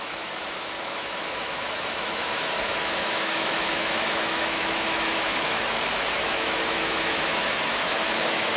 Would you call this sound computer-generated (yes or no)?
yes